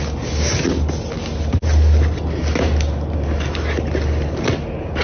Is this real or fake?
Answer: real